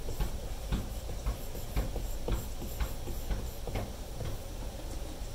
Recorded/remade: recorded